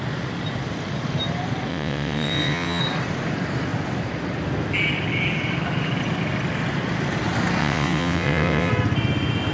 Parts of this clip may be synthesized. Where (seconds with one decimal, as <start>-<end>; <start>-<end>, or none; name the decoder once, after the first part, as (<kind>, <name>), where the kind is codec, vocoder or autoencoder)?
1.7-2.8 (vocoder, WaveNeXt); 7.6-8.7